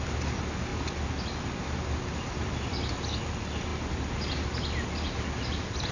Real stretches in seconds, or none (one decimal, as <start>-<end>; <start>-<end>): 0.0-5.9